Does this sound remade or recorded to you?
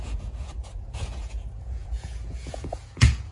remade